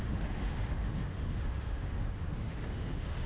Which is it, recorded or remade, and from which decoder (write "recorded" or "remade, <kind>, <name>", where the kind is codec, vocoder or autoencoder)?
remade, autoencoder, DAC-VAE